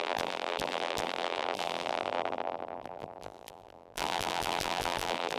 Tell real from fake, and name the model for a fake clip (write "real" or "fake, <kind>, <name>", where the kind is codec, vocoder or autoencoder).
fake, vocoder, BigVGAN v2